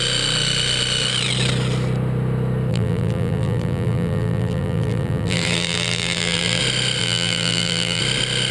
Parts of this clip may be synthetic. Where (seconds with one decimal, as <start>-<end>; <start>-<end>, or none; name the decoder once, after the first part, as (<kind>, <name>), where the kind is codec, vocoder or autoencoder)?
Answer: 2.7-6.6 (vocoder, BigVGAN v2); 7.0-8.0